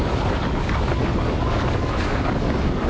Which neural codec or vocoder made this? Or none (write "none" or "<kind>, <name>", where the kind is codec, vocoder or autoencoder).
codec, DAC